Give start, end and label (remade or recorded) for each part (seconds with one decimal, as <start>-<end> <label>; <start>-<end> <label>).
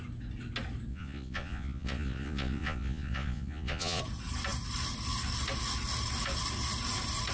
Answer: 0.0-0.9 recorded; 0.9-4.0 remade; 4.0-7.3 recorded